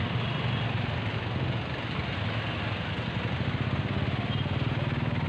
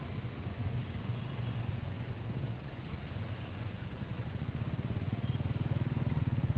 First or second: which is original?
first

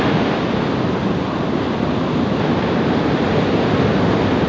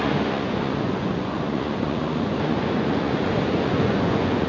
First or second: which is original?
first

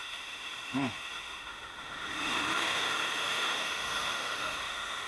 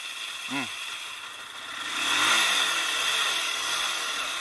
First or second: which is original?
second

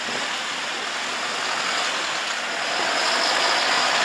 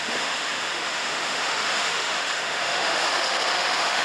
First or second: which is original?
first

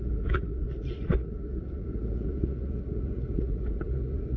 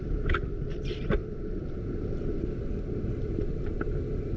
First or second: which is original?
second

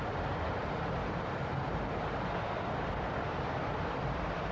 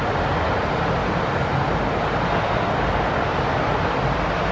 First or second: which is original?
second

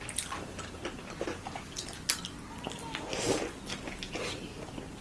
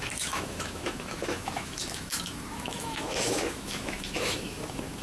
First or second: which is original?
first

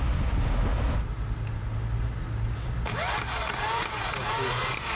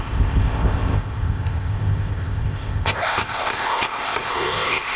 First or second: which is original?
first